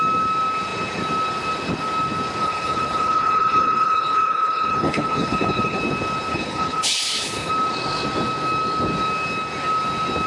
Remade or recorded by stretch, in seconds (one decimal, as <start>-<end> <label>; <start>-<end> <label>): 0.0-2.4 recorded; 2.4-5.8 remade; 5.8-6.3 recorded; 6.3-7.5 remade; 7.5-10.3 recorded